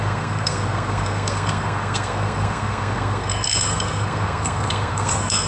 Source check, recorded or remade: remade